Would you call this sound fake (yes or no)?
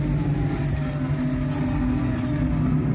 no